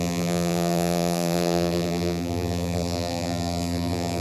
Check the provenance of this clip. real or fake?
fake